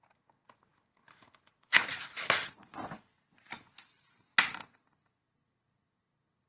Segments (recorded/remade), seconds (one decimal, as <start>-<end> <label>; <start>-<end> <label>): 0.0-6.5 recorded